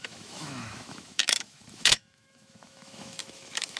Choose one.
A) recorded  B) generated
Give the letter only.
B